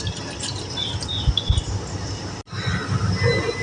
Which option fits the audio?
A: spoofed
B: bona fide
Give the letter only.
B